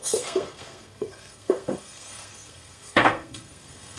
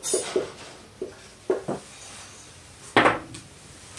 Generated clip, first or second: first